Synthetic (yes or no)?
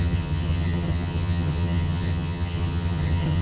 yes